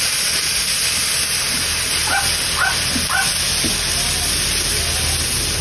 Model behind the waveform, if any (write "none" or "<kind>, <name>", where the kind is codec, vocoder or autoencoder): none